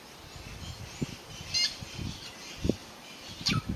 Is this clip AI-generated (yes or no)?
no